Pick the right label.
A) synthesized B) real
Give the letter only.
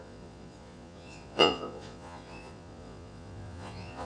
A